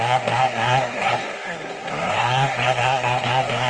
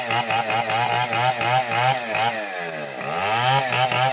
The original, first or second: second